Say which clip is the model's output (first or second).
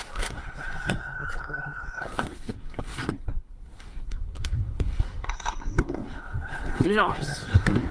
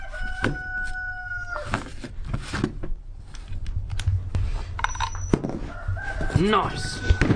first